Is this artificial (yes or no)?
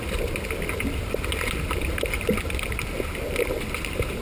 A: no